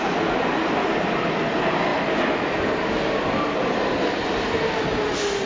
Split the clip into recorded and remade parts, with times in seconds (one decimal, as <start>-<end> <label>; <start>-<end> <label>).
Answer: 0.0-5.5 recorded